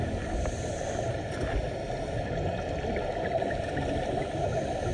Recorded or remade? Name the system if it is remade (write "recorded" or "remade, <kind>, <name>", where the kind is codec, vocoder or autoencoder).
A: recorded